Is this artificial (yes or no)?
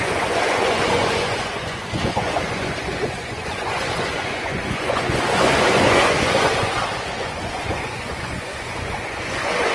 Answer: yes